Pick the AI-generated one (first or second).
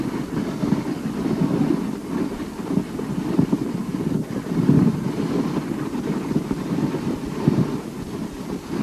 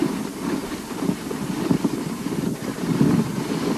second